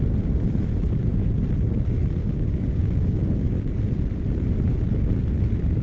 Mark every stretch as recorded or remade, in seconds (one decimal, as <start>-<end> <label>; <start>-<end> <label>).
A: 0.0-2.2 recorded; 2.2-3.7 remade; 3.7-5.8 recorded